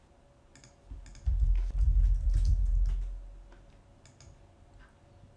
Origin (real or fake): real